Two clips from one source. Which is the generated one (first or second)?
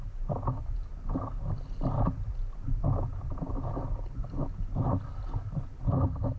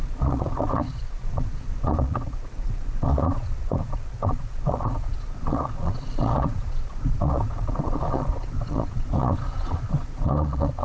second